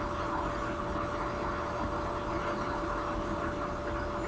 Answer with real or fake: real